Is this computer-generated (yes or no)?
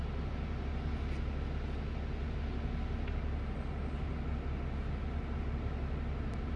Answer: no